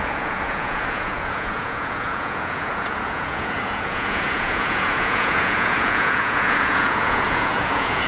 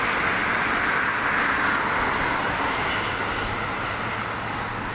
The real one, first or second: second